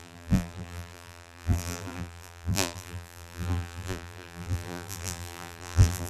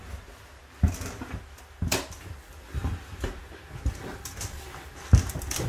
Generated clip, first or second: first